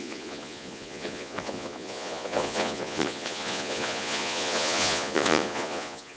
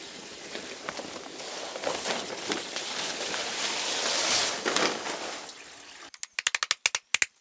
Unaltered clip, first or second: second